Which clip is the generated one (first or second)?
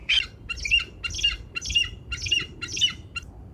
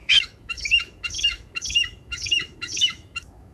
second